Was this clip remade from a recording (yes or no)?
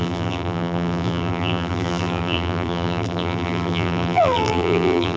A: yes